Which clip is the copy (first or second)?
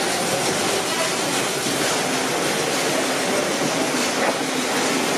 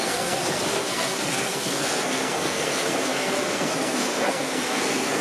second